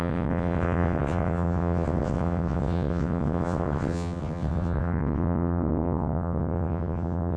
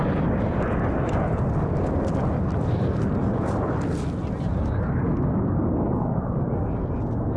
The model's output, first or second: first